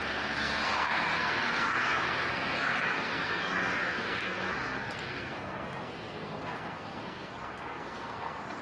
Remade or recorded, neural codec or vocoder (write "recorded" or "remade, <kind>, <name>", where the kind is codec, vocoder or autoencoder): remade, codec, SNAC